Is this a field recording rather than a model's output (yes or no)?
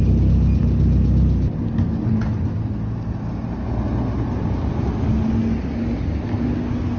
yes